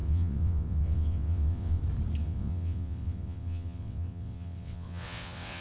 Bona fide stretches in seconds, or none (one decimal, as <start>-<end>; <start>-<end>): 1.8-2.2